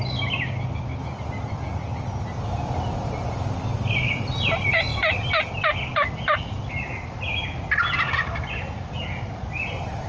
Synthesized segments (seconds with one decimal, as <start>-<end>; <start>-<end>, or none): none